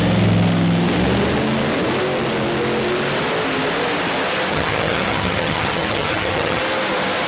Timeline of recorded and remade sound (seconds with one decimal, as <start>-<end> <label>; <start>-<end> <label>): 0.0-4.5 recorded; 4.5-6.6 remade; 6.6-7.3 recorded